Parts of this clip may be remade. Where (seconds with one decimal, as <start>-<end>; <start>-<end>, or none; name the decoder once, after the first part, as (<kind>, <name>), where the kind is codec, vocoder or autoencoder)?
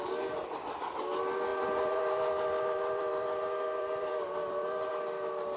1.5-4.9 (vocoder, BigVGAN v2)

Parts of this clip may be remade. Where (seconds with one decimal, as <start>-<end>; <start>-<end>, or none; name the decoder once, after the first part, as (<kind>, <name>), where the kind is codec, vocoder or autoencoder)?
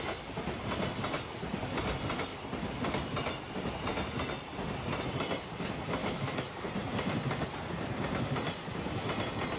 6.0-6.6 (autoencoder, DAC-VAE)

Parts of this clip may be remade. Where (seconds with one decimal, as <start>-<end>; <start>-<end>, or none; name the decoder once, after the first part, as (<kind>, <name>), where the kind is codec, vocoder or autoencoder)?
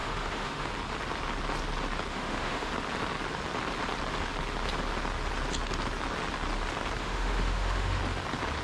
0.0-0.7 (autoencoder, DAC-VAE); 2.1-2.7; 7.0-8.0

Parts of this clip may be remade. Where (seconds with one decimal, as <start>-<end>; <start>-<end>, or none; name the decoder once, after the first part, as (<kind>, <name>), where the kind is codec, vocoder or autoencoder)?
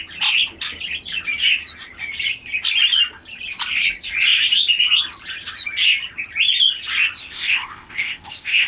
7.2-8.7 (codec, ZipCodec)